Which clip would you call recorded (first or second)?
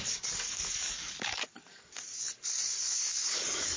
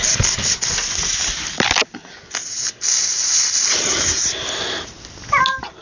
second